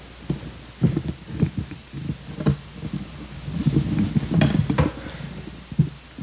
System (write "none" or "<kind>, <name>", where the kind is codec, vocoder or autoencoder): none